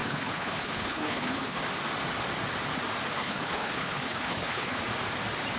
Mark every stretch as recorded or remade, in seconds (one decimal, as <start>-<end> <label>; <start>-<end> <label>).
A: 0.0-1.6 remade; 1.6-3.1 recorded; 3.1-4.8 remade; 4.8-5.6 recorded